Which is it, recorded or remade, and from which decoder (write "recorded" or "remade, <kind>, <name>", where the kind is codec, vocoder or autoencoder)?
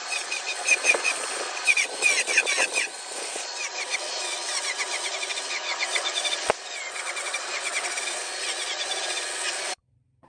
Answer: remade, vocoder, Vocos